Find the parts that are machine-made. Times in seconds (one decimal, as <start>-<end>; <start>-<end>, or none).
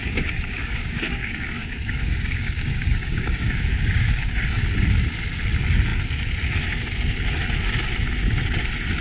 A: 0.0-4.2